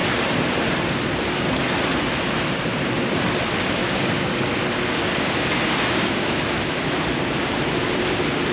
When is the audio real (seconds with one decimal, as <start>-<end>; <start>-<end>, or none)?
0.0-3.8; 4.5-5.0; 6.4-8.5